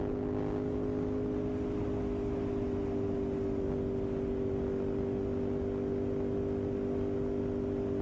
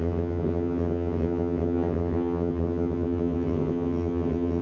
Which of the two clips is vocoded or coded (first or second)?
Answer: second